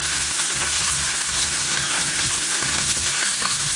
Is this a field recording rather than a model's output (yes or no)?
no